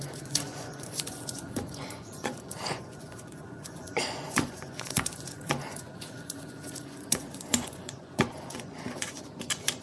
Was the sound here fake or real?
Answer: fake